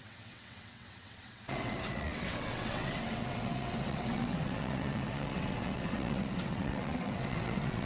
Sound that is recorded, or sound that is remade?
remade